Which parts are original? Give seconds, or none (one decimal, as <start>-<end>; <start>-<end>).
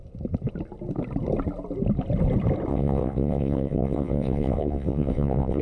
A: 0.0-2.7